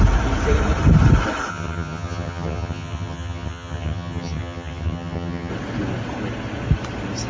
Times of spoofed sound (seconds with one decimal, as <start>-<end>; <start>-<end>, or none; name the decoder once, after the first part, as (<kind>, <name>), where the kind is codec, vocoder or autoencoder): 1.5-5.5 (vocoder, HiFi-GAN)